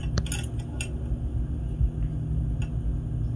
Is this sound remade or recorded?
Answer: recorded